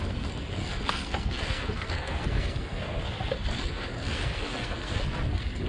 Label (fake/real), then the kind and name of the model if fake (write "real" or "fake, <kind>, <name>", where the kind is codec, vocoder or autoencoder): fake, codec, SNAC